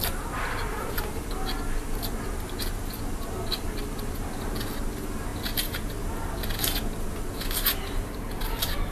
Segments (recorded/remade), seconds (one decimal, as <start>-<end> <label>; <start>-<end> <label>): 0.0-0.7 recorded; 0.7-1.2 remade; 1.2-8.9 recorded